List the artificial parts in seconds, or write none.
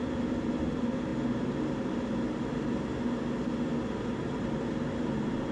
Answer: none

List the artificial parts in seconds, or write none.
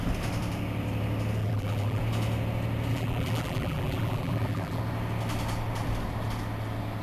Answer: 1.4-2.0; 2.9-4.8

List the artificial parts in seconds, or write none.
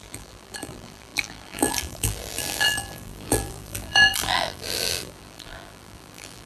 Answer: 0.0-6.5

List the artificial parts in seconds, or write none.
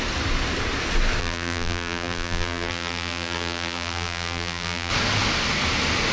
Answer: 1.2-4.9